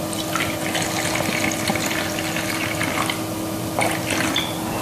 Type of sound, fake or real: real